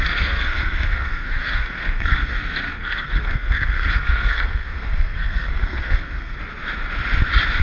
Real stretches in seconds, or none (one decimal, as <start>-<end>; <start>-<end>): 6.4-7.6